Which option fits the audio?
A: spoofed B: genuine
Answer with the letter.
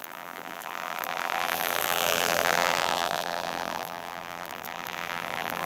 A